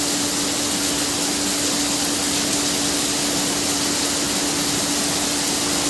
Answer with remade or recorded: recorded